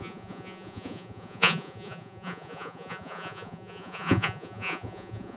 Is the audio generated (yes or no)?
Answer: yes